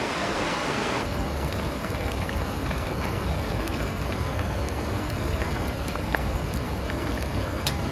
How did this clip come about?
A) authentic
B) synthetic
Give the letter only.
B